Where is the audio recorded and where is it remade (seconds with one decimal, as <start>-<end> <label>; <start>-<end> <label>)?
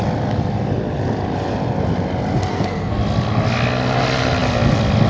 0.0-2.5 recorded; 2.5-3.0 remade; 3.0-5.1 recorded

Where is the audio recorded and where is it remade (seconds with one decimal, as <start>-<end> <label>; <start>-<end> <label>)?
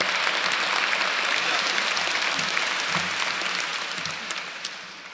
0.0-5.1 recorded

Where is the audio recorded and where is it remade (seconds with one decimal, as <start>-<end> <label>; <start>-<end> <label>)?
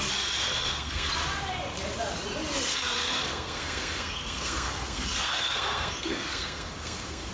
0.0-0.4 recorded; 0.4-1.1 remade; 1.1-2.7 recorded; 2.7-7.3 remade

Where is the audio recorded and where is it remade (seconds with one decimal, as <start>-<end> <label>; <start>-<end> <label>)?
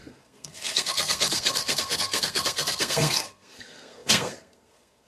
0.0-5.1 remade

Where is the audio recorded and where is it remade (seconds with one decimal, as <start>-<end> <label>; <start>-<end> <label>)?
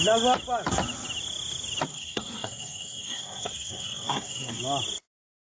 0.0-1.9 recorded; 1.9-4.6 remade; 4.6-5.5 recorded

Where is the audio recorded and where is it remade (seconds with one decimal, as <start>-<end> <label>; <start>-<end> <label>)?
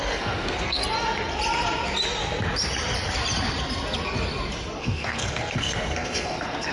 0.0-0.8 remade; 0.8-4.8 recorded; 4.8-6.7 remade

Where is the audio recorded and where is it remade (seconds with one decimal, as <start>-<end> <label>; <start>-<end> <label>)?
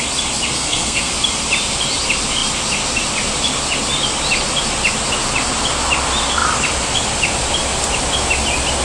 0.0-0.5 recorded; 0.5-1.1 remade; 1.1-8.8 recorded